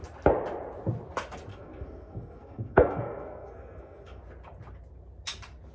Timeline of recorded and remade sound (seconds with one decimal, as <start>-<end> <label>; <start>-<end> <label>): 0.0-1.5 recorded; 1.5-4.2 remade; 4.2-5.7 recorded